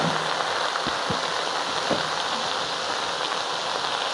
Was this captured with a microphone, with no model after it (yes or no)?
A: yes